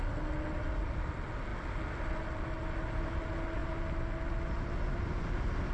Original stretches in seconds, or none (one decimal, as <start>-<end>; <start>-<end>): 0.0-5.7